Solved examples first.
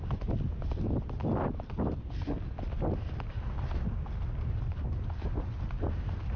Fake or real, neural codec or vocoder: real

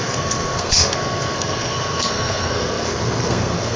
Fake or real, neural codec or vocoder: fake, codec, SNAC